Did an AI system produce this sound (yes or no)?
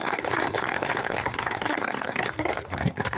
yes